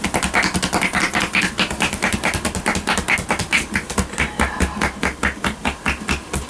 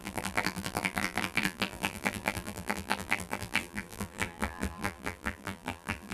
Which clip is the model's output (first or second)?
second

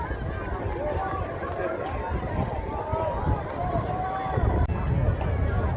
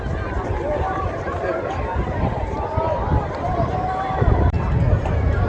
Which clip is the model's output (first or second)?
second